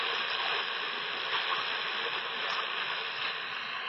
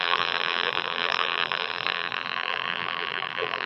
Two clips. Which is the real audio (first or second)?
first